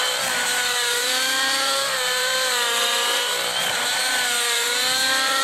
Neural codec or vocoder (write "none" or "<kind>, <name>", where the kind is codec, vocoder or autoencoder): vocoder, BigVGAN v2